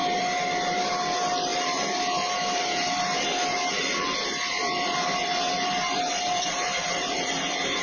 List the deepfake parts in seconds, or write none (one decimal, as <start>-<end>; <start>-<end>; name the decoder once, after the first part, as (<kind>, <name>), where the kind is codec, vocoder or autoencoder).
none